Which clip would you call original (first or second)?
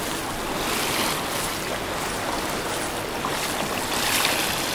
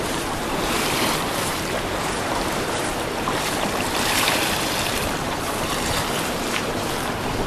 first